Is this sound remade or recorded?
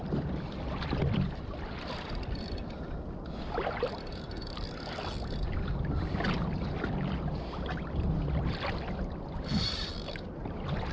recorded